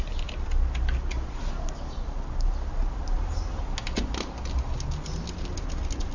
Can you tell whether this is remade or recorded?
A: recorded